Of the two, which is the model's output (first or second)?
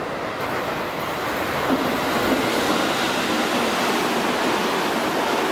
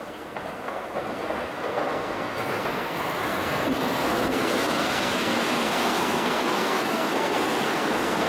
second